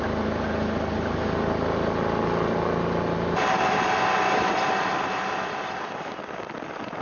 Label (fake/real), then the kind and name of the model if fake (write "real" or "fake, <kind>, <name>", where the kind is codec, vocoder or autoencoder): real